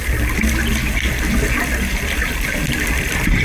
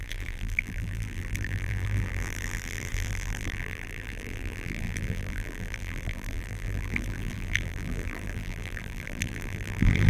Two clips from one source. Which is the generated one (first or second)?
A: second